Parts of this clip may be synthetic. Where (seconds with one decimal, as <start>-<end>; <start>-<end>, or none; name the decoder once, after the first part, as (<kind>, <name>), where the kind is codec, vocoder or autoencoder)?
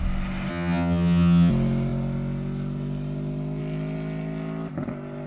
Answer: 0.5-1.5 (vocoder, HiFi-GAN)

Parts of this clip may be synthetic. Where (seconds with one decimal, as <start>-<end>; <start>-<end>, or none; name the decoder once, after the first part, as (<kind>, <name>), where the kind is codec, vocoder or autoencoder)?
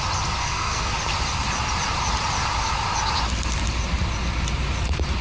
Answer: 0.4-0.9 (codec, SNAC)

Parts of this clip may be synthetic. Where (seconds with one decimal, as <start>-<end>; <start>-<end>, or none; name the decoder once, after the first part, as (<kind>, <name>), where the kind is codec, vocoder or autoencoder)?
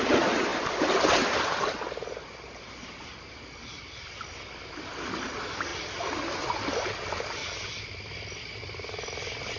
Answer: none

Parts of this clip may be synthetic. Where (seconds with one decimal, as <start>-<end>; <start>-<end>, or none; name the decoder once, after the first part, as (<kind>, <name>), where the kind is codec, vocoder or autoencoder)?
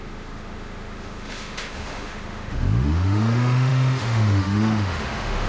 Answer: 0.0-5.5 (autoencoder, DAC-VAE)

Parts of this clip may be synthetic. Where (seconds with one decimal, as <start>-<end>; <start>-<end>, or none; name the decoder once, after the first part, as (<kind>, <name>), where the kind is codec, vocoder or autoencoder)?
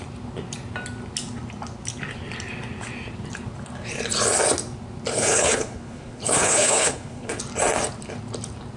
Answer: 5.1-7.4 (codec, HILCodec)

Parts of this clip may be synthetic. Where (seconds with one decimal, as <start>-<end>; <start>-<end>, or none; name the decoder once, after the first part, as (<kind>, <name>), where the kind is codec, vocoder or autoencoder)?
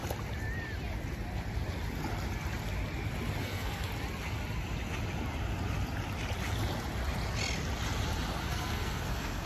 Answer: 3.4-3.9 (codec, SNAC); 8.5-9.5